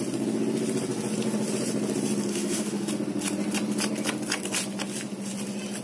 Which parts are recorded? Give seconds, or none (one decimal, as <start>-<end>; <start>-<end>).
0.0-2.3; 2.9-5.8